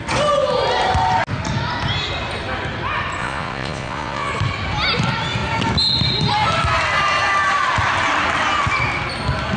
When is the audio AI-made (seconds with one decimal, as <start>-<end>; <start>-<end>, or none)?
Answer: 3.2-4.3